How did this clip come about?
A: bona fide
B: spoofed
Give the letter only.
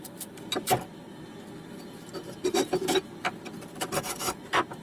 B